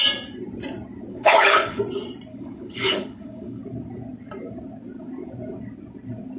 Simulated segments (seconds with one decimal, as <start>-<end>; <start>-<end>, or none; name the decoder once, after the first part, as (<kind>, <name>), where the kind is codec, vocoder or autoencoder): 1.1-1.8 (codec, HILCodec); 2.3-3.6

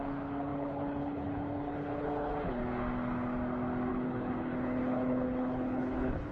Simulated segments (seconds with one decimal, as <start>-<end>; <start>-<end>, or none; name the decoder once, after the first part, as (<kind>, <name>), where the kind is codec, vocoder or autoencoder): 0.0-2.6 (codec, HILCodec); 3.9-6.3